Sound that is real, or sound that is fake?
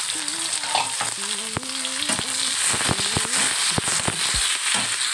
real